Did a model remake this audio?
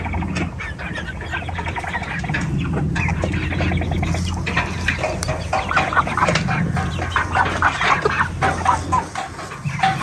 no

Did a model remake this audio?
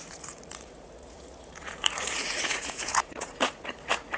yes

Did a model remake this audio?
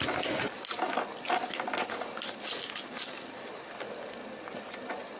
no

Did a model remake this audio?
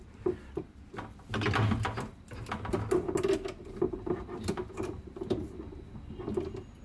no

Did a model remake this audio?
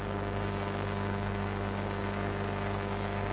yes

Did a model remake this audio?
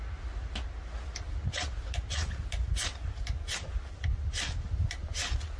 no